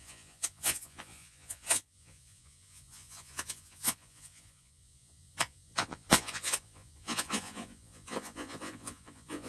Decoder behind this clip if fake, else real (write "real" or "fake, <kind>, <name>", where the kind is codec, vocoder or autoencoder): fake, vocoder, Vocos